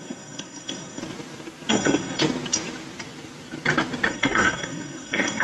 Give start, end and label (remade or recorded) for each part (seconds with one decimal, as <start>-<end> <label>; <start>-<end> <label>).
0.0-1.0 remade; 1.0-1.7 recorded; 1.7-2.2 remade; 2.2-4.1 recorded; 4.1-5.4 remade